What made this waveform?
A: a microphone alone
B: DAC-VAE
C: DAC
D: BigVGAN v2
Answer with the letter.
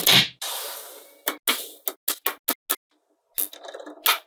A